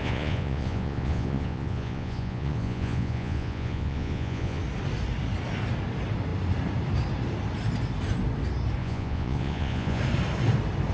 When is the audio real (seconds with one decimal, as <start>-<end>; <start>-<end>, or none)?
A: 4.6-8.8; 10.0-10.9